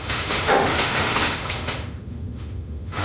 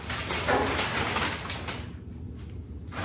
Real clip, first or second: second